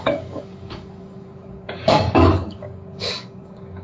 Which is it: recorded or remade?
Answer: remade